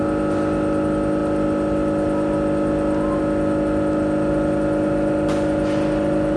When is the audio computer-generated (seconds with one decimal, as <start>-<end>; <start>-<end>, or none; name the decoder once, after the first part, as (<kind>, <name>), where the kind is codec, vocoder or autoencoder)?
none